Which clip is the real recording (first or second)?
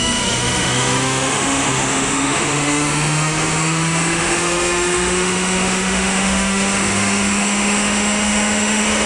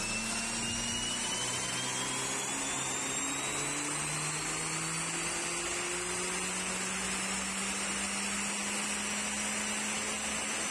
second